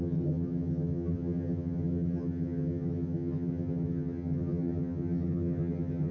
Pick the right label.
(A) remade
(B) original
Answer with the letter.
A